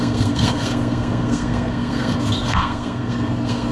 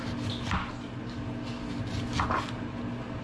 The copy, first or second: first